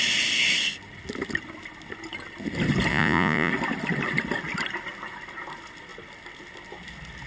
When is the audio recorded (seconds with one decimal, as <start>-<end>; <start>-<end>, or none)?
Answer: 0.0-2.9; 3.5-7.3